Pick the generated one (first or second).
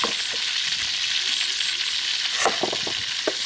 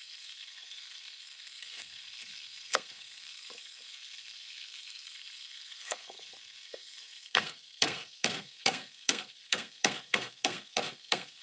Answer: second